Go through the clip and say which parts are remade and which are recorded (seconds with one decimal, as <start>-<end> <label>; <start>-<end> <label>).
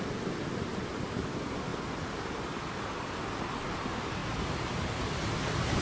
0.0-5.8 recorded